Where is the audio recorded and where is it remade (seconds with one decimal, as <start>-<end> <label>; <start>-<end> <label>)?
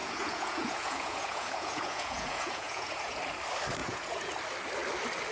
0.0-3.2 remade; 3.2-3.8 recorded; 3.8-4.3 remade; 4.3-5.3 recorded